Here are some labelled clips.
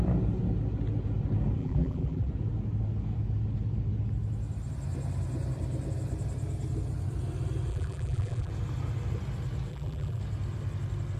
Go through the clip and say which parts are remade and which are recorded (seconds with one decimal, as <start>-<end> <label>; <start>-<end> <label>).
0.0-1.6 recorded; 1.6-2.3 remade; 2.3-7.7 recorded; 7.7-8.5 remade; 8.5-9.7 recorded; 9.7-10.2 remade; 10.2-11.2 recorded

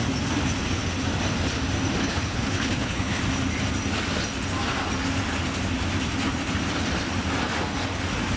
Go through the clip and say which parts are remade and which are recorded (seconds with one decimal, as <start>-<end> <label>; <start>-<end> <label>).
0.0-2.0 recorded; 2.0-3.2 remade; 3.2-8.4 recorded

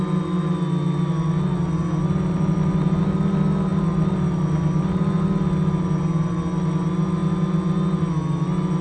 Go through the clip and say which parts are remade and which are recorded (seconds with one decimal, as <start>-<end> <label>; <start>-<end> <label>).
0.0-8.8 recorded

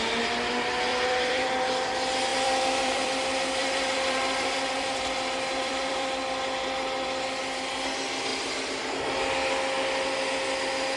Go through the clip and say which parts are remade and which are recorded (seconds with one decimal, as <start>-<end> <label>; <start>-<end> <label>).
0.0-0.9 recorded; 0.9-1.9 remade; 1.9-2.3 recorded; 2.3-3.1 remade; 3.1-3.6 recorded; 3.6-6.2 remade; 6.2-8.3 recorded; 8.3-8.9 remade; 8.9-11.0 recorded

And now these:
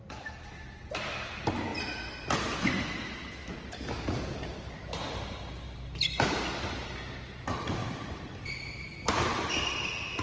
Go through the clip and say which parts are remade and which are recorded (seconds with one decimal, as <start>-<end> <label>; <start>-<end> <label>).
0.0-7.8 recorded; 7.8-8.5 remade; 8.5-8.9 recorded; 8.9-10.2 remade

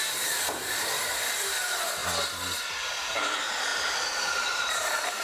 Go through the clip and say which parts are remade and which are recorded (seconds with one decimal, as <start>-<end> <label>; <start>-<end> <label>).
0.0-2.0 remade; 2.0-2.7 recorded; 2.7-5.2 remade